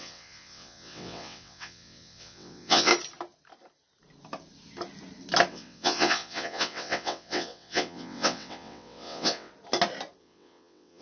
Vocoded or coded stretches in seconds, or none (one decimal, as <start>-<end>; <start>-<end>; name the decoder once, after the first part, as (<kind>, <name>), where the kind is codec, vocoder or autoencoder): 0.0-2.9 (vocoder, WaveNeXt); 5.5-9.5; 10.2-11.0